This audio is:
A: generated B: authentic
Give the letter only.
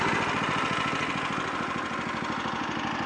B